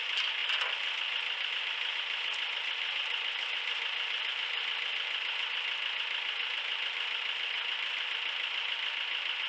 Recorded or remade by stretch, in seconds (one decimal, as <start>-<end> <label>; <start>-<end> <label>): 0.0-9.5 recorded